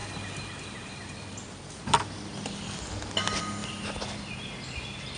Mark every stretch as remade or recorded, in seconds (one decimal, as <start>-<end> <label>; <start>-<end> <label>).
0.0-5.2 recorded